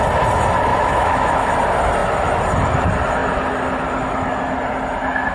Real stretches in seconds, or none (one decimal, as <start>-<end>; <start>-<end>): 0.0-0.7; 1.6-5.3